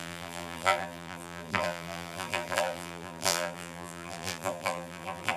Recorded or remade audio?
remade